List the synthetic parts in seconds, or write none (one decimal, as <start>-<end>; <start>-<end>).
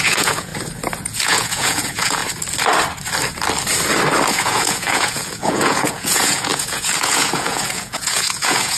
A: 0.0-0.5; 1.0-2.2; 4.3-8.8